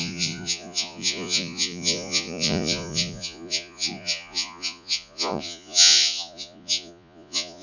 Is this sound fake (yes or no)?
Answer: yes